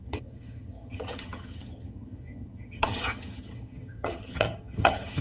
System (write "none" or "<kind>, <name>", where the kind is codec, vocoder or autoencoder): vocoder, HiFi-GAN